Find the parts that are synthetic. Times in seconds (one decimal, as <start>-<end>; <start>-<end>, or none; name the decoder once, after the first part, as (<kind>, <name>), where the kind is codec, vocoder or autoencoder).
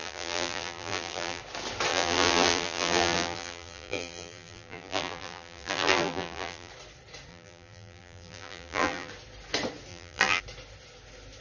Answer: 0.0-1.4 (vocoder, BigVGAN v2); 1.9-6.7; 7.3-9.1; 9.9-10.4